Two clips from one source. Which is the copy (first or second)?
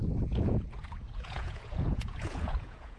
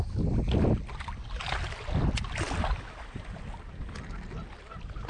first